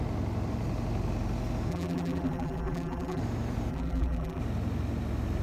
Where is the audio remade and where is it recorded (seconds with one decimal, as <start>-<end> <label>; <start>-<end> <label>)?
0.0-1.7 recorded; 1.7-3.2 remade; 3.2-3.7 recorded; 3.7-4.4 remade; 4.4-5.4 recorded